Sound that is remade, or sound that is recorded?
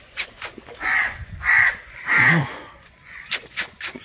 remade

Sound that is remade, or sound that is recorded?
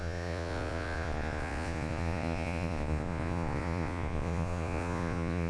remade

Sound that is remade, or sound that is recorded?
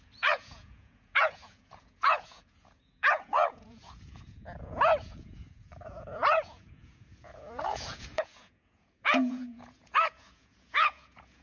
remade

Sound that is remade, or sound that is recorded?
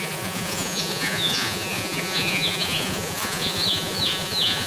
remade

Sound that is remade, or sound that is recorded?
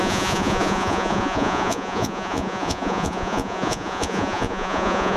remade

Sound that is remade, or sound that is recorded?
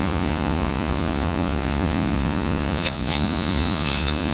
remade